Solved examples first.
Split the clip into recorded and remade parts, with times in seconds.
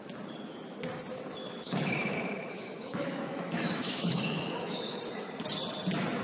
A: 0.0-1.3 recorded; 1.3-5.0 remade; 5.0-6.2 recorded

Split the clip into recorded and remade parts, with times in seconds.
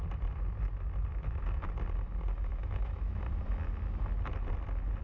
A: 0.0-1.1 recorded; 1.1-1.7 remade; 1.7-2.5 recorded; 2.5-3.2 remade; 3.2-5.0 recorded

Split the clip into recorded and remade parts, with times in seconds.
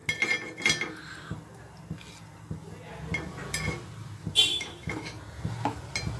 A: 0.0-4.5 recorded; 4.5-5.2 remade; 5.2-6.2 recorded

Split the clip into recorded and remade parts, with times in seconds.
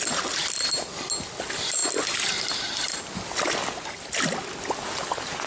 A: 0.0-5.5 recorded